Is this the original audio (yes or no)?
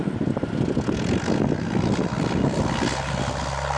yes